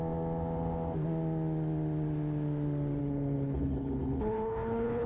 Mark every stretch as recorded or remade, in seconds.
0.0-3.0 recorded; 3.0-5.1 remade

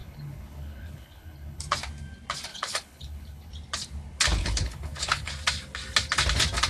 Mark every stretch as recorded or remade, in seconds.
0.0-1.6 remade; 1.6-2.5 recorded; 2.5-3.5 remade; 3.5-4.4 recorded; 4.4-5.3 remade; 5.3-6.7 recorded

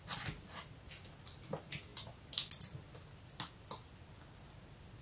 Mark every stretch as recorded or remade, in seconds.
0.0-5.0 recorded

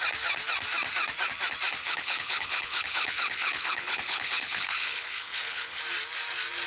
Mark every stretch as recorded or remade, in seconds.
0.0-1.8 recorded; 1.8-5.8 remade; 5.8-6.7 recorded